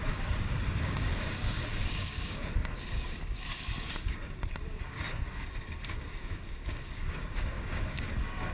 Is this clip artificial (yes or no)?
yes